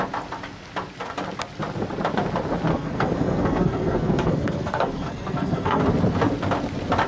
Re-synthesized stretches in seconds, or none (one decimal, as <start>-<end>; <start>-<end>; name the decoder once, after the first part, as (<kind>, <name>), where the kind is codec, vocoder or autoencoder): 2.7-5.8 (codec, SNAC)